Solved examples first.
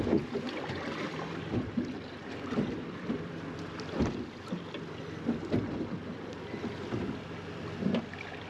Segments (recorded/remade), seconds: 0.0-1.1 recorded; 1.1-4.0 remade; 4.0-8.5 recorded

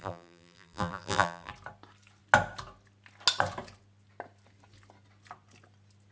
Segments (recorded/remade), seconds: 0.0-1.5 remade; 1.5-6.1 recorded

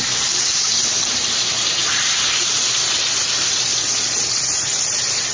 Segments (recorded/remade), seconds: 0.0-3.7 remade; 3.7-4.3 recorded; 4.3-5.3 remade

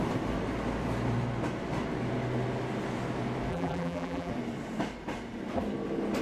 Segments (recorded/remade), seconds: 0.0-3.5 recorded; 3.5-4.3 remade; 4.3-6.2 recorded

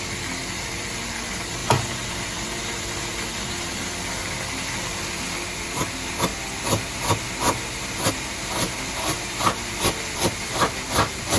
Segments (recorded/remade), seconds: 0.0-1.6 remade; 1.6-3.0 recorded; 3.0-6.3 remade; 6.3-8.9 recorded; 8.9-11.4 remade